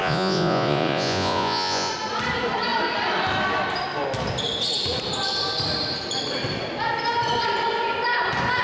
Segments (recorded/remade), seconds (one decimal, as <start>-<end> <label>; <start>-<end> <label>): 0.0-1.9 remade; 1.9-8.6 recorded